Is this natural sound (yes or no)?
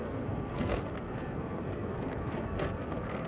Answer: no